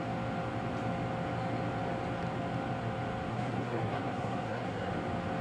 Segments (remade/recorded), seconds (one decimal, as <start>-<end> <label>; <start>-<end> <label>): 0.0-3.3 recorded; 3.3-4.9 remade; 4.9-5.4 recorded